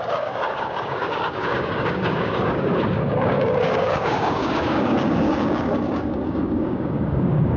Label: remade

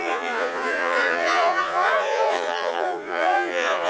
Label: remade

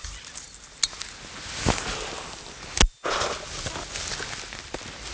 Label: recorded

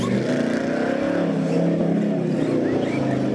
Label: recorded